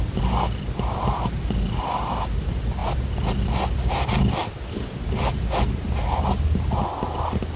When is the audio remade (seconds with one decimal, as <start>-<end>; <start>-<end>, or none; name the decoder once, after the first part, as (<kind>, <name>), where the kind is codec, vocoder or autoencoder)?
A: none